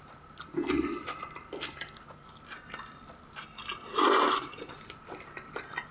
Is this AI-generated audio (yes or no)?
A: no